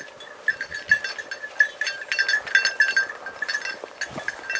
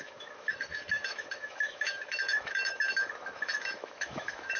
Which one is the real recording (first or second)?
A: first